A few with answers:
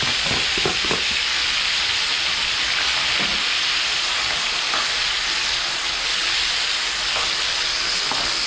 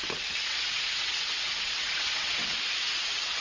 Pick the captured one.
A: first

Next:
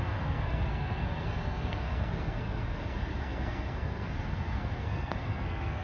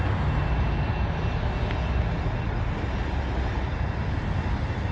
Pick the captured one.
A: second